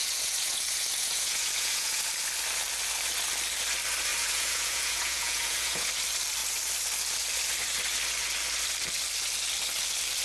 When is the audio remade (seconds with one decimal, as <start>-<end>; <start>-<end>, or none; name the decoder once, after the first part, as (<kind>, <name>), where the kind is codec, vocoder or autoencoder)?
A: 0.0-2.0 (vocoder, Vocos); 4.1-5.9